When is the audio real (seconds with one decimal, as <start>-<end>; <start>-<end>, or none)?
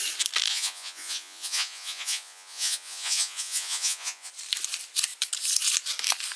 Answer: 0.0-0.5; 4.3-6.4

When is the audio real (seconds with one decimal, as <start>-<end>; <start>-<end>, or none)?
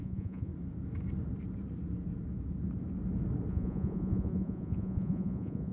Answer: 0.5-3.5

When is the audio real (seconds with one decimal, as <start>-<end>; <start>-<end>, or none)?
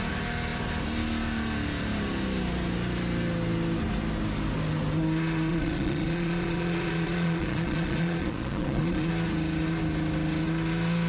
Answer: 0.0-5.5; 9.1-11.1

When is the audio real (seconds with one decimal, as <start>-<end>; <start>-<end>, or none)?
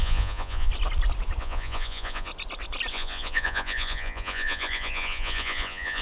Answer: 0.7-1.4; 2.3-2.9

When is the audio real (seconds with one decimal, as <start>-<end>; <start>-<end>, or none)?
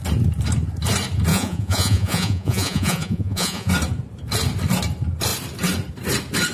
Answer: 0.0-1.3; 3.7-6.5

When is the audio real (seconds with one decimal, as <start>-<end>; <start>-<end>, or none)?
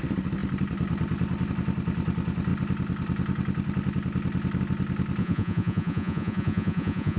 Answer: 0.0-5.2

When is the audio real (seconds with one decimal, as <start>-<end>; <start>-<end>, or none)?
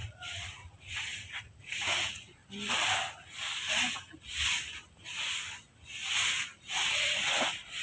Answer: 2.4-6.7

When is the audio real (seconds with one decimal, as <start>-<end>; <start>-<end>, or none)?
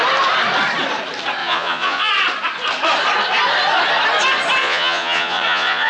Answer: 0.0-1.4; 2.1-4.6